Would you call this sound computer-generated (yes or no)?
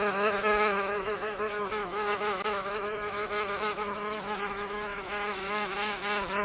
yes